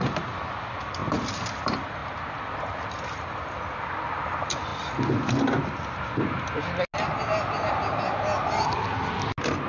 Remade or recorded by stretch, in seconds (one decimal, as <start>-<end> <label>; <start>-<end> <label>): 0.0-9.7 recorded